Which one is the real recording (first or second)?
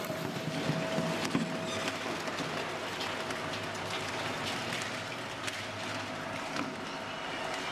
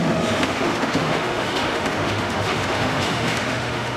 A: first